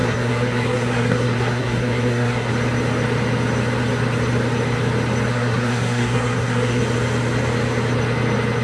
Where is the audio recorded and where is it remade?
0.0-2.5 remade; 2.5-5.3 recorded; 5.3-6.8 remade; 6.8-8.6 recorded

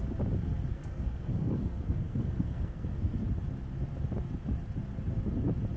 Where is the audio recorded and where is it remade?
0.0-0.7 recorded; 0.7-3.2 remade; 3.2-5.8 recorded

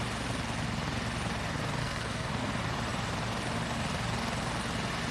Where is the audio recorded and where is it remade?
0.0-1.8 recorded; 1.8-2.5 remade; 2.5-5.1 recorded

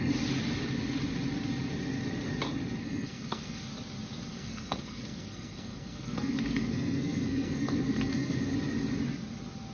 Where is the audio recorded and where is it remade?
0.0-2.8 recorded; 2.8-3.6 remade; 3.6-4.3 recorded; 4.3-8.4 remade; 8.4-9.7 recorded

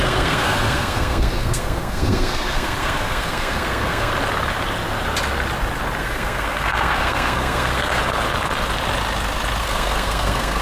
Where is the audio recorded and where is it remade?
0.0-4.1 remade; 4.1-6.0 recorded; 6.0-8.0 remade; 8.0-9.6 recorded; 9.6-10.6 remade

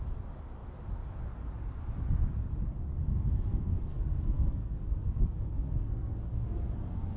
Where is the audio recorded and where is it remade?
0.0-3.5 recorded; 3.5-7.2 remade

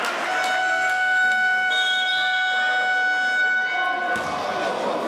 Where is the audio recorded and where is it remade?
0.0-0.6 recorded; 0.6-1.7 remade; 1.7-5.1 recorded